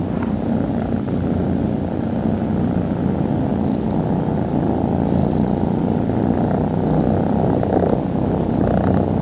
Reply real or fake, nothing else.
real